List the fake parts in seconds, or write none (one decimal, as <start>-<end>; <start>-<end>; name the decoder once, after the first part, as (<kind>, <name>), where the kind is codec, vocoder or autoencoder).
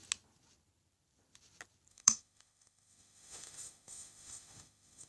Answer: 1.9-5.1 (autoencoder, DAC-VAE)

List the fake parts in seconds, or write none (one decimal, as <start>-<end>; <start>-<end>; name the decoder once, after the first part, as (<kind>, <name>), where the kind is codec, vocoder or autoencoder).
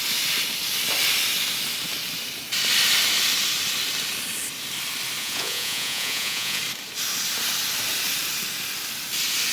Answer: 5.2-6.6 (vocoder, Vocos)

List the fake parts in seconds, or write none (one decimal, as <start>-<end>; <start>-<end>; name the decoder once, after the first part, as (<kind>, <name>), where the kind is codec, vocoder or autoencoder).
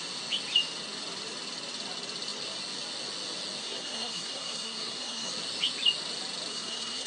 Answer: 3.6-5.3 (codec, SNAC); 6.5-7.1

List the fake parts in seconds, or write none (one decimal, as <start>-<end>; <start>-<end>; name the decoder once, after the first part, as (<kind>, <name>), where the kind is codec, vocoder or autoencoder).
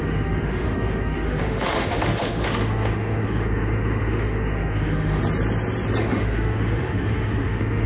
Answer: 0.0-5.2 (autoencoder, DAC-VAE); 6.0-7.9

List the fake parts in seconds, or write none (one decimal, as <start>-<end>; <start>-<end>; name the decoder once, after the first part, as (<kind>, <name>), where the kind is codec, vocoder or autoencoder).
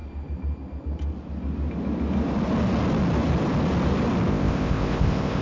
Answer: 4.3-5.4 (codec, ZipCodec)